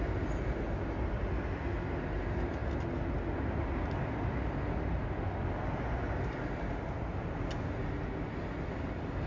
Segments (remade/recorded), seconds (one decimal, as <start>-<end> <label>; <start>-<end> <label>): 0.0-9.3 recorded